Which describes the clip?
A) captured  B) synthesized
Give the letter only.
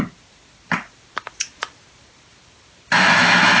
A